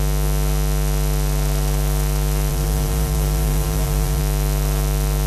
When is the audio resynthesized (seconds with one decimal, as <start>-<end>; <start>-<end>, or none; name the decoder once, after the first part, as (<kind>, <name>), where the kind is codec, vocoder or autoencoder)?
2.5-4.2 (vocoder, BigVGAN v2)